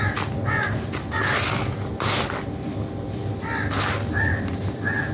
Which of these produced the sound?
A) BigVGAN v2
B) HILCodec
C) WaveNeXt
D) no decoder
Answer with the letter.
D